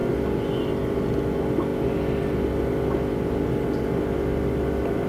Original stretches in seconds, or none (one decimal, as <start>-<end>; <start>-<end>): 0.0-5.1

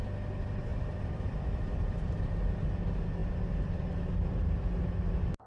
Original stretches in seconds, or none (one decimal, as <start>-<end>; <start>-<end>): 0.0-0.7; 2.2-5.5

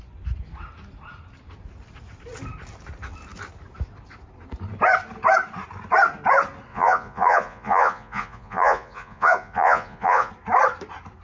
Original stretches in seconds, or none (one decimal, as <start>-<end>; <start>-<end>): 0.0-6.7; 10.3-11.2

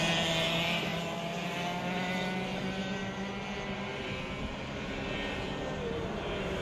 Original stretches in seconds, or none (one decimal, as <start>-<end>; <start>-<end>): 0.0-6.6

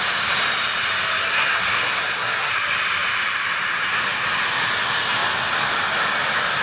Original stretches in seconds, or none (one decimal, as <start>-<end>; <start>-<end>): 0.0-1.2; 2.5-6.6